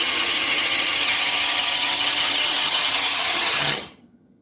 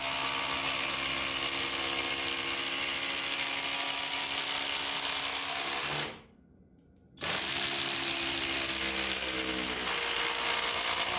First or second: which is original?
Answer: second